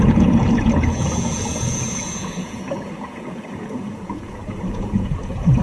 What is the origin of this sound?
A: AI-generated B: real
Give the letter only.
A